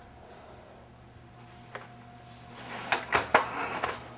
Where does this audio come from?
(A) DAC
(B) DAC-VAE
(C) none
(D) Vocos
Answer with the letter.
C